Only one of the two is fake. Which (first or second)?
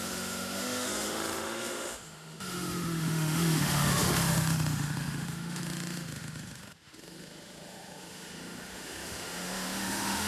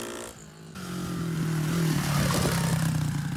first